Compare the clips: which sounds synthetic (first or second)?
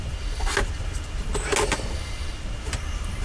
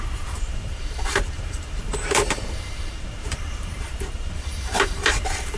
second